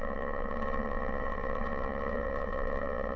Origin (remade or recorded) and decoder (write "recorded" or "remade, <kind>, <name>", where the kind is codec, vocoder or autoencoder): remade, vocoder, WaveNeXt